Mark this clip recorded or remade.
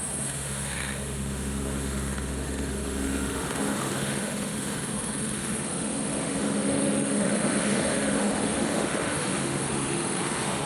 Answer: remade